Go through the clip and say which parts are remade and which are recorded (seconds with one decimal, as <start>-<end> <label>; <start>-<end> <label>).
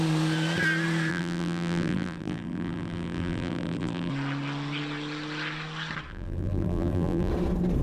0.0-1.1 recorded; 1.1-4.1 remade; 4.1-6.1 recorded; 6.1-7.3 remade; 7.3-7.8 recorded